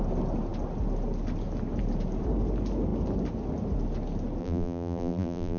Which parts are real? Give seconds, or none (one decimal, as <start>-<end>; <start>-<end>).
0.0-4.4